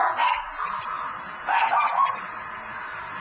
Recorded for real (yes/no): yes